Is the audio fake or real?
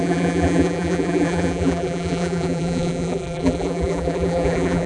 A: fake